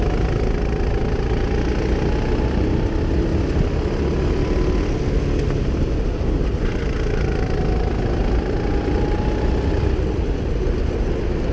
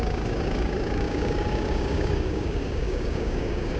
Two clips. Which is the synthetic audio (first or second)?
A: second